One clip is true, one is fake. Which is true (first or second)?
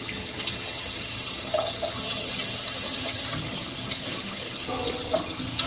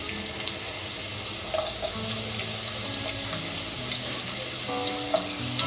second